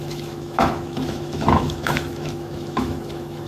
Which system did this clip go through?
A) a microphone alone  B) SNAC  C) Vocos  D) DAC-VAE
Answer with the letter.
D